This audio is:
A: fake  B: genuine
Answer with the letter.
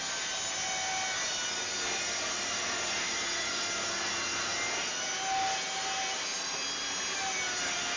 B